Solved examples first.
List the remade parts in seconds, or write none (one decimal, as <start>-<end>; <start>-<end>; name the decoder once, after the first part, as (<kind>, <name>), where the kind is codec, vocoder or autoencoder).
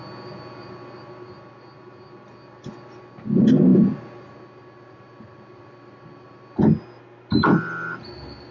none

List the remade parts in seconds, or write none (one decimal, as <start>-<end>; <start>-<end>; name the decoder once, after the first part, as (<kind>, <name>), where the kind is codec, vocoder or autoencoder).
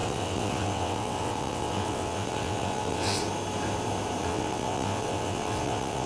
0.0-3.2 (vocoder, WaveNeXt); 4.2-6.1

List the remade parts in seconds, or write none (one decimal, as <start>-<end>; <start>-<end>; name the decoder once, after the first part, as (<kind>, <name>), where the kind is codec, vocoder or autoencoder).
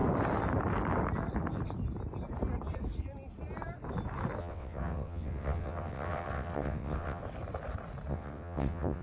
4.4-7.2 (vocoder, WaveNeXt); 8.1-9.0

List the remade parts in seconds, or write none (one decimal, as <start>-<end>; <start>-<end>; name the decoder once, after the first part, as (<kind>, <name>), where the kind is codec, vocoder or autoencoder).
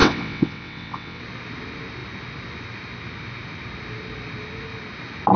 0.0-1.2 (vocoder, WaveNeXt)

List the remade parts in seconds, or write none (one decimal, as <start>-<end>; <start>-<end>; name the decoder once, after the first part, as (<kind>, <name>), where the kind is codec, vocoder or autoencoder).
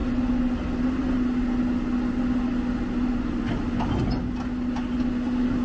none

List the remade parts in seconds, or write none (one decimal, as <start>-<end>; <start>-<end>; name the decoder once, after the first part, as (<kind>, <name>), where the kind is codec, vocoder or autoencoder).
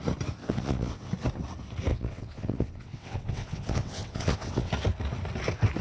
0.4-1.1 (vocoder, WaveNeXt); 1.9-4.7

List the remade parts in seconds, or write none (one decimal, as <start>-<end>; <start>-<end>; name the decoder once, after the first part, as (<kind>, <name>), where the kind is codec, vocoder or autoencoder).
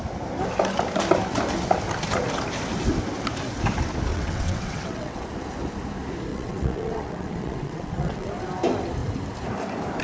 4.1-5.2 (vocoder, WaveNeXt); 6.3-8.3